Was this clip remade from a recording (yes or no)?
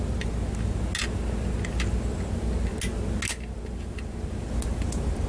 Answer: no